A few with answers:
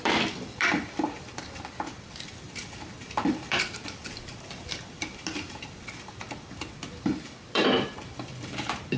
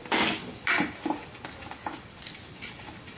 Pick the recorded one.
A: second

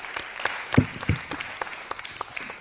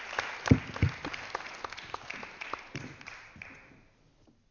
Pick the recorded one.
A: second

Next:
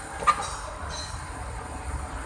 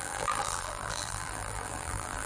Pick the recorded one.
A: first